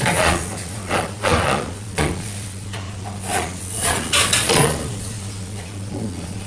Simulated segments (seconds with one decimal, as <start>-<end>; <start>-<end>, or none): 0.0-6.5

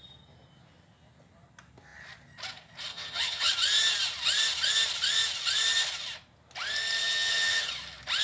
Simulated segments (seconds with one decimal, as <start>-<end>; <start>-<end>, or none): 2.9-3.5; 7.0-7.7

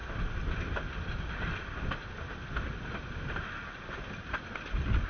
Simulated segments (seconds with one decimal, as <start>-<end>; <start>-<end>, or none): none

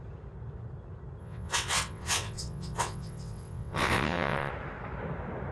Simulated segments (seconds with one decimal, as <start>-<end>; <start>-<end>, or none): 1.2-4.5

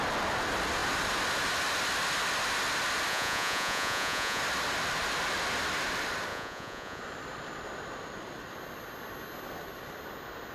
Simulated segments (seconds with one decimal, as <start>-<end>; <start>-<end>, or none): 3.1-4.4; 6.3-7.0

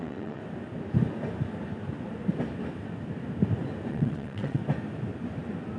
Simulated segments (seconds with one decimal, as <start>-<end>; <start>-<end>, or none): 0.0-0.4; 3.9-4.6

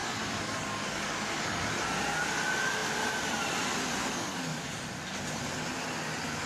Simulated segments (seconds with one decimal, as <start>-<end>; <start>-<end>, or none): 0.0-1.8; 4.0-4.7

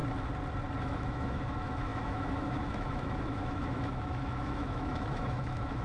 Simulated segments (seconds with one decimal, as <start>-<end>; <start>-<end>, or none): 0.8-5.8